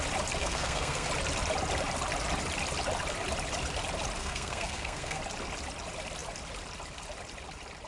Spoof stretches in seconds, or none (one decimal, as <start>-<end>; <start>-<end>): 0.4-1.1; 4.2-5.2